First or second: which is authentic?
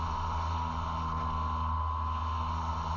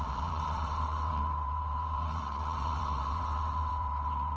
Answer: first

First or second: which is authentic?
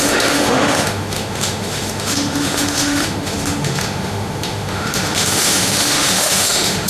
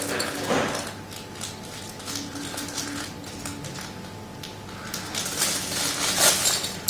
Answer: second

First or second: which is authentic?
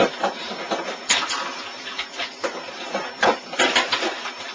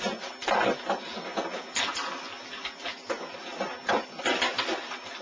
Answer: second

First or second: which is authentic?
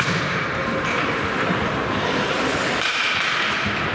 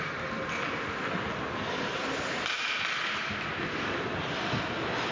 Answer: second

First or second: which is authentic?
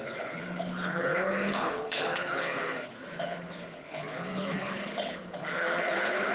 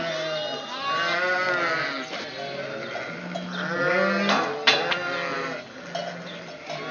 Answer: second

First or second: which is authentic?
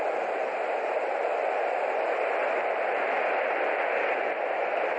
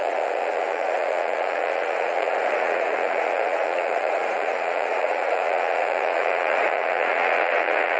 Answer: first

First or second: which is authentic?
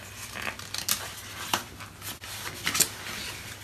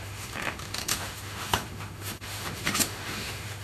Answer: first